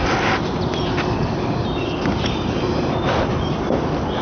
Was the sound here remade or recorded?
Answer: recorded